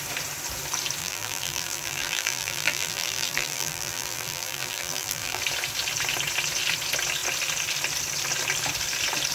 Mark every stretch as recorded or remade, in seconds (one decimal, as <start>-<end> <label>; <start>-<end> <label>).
0.0-1.0 recorded; 1.0-5.4 remade; 5.4-9.3 recorded